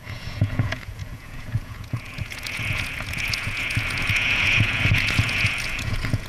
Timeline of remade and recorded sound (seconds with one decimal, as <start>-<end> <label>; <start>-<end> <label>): 0.0-6.3 remade